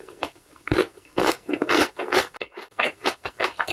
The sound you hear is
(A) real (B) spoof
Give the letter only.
B